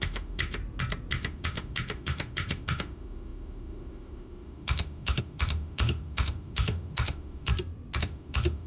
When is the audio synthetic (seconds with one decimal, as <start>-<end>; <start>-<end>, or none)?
0.0-0.6; 1.1-7.5; 8.0-8.7